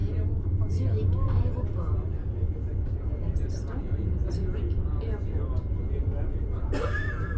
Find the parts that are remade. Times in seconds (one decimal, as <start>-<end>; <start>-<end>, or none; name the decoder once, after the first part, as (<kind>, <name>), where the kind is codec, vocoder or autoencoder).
none